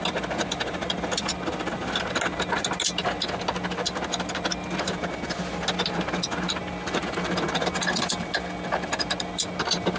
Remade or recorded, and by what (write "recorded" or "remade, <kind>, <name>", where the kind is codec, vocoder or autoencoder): recorded